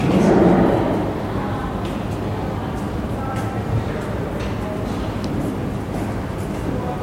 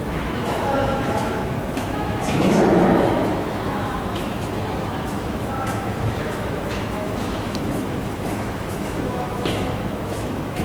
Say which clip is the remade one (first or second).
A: second